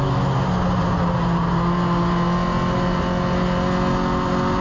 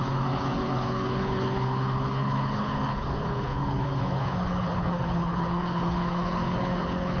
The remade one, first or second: second